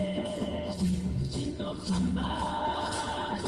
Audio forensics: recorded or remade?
remade